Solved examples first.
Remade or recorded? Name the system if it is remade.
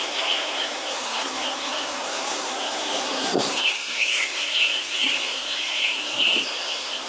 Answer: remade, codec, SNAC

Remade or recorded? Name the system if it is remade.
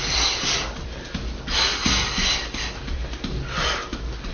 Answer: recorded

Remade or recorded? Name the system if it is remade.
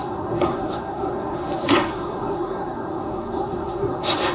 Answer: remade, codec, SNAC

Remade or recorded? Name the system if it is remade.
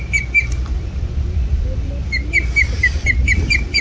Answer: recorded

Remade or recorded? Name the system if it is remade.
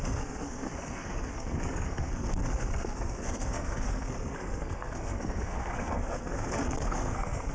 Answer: remade, codec, SNAC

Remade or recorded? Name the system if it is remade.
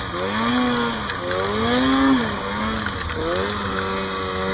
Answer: recorded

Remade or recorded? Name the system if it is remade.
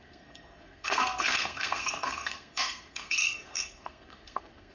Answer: remade, codec, SNAC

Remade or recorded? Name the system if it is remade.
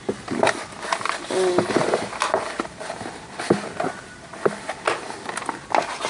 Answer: recorded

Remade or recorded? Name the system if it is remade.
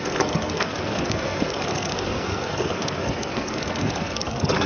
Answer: remade, codec, SNAC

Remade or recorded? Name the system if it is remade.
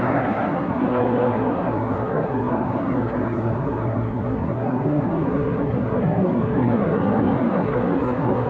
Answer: remade, codec, SNAC